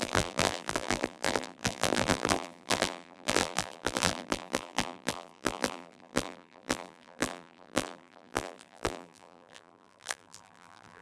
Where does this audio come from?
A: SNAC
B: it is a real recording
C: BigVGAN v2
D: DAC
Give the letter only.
C